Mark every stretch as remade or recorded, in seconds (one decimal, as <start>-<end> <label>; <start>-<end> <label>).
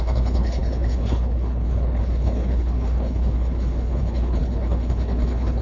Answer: 0.0-5.6 remade